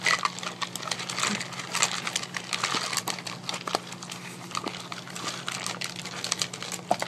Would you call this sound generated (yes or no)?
no